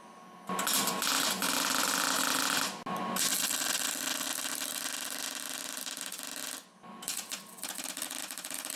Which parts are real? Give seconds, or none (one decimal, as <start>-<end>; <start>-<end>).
0.0-8.8